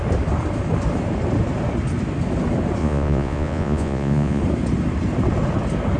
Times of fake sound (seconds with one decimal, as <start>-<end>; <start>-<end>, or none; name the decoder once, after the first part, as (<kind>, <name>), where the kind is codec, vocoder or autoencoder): 2.8-4.4 (vocoder, Vocos)